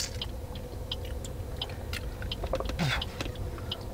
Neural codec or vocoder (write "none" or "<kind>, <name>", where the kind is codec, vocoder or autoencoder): none